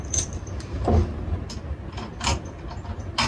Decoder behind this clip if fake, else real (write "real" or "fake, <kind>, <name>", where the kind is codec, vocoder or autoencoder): real